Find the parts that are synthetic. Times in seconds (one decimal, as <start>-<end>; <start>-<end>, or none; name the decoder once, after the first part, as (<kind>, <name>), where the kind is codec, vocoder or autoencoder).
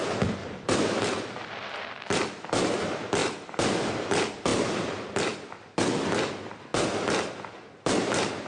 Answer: 0.4-2.1 (vocoder, BigVGAN v2); 3.2-3.9; 4.5-5.5